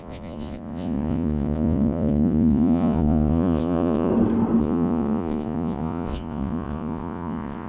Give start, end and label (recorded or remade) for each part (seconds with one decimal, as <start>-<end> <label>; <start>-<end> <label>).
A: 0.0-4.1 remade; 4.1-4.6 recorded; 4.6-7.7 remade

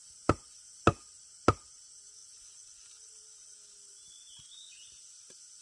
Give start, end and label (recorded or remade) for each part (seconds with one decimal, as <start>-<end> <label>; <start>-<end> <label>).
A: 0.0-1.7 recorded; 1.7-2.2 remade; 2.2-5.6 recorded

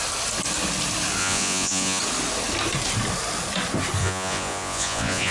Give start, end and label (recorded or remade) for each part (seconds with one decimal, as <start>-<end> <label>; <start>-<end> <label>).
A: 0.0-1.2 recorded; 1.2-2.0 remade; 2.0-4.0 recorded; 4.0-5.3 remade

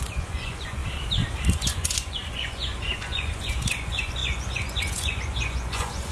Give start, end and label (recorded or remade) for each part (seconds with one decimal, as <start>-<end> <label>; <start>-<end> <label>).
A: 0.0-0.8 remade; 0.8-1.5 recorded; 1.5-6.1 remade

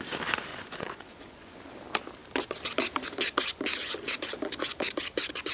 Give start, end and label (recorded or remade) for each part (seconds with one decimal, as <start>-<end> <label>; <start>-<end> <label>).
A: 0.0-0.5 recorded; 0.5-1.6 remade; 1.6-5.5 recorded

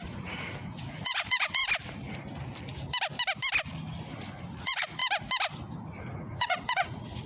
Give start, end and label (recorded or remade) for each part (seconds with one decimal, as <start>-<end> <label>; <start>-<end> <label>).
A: 0.0-1.6 remade; 1.6-4.6 recorded; 4.6-5.0 remade; 5.0-6.0 recorded; 6.0-7.3 remade

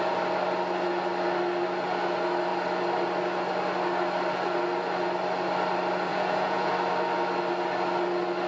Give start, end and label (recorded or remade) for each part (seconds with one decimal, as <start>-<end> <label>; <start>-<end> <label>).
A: 0.0-6.1 recorded; 6.1-6.7 remade; 6.7-8.5 recorded